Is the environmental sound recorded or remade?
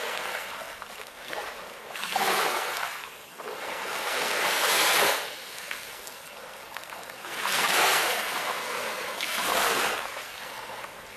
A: remade